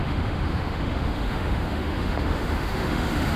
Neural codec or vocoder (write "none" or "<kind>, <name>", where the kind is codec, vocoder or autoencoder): autoencoder, DAC-VAE